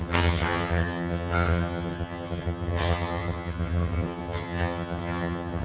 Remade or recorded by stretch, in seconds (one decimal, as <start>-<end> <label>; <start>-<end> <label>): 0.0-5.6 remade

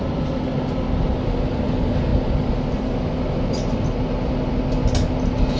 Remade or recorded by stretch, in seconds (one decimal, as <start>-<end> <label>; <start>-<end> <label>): 0.0-5.6 recorded

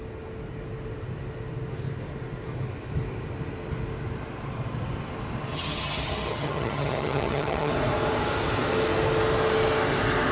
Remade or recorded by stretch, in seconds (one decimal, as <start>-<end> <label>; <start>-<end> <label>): 0.0-5.5 recorded; 5.5-7.7 remade; 7.7-10.3 recorded

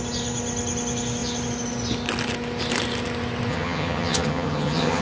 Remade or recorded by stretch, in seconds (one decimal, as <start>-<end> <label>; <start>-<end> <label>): 0.0-3.5 recorded; 3.5-5.0 remade

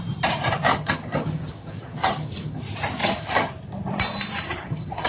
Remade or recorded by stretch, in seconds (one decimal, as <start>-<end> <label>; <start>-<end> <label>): 0.0-0.7 recorded; 0.7-2.6 remade; 2.6-3.0 recorded; 3.0-3.5 remade; 3.5-4.6 recorded; 4.6-5.1 remade